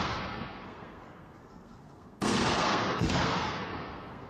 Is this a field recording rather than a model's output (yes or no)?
no